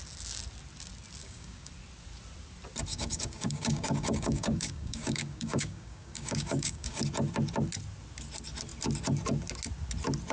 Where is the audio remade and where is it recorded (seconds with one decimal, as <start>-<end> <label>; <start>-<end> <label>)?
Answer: 0.0-1.2 recorded; 1.2-1.7 remade; 1.7-2.9 recorded; 2.9-7.0 remade; 7.0-10.3 recorded